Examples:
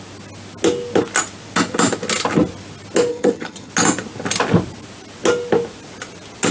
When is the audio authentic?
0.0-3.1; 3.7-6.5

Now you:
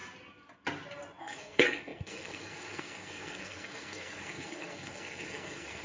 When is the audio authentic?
0.0-1.2